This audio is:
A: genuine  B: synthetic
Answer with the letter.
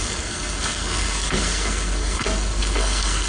B